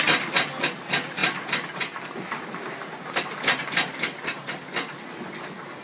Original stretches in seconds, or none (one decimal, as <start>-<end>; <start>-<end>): 0.0-5.8